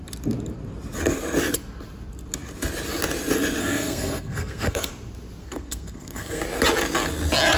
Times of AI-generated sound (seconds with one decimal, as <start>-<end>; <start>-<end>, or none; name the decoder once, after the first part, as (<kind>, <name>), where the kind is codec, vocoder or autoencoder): 3.6-4.9 (codec, SNAC); 5.4-6.4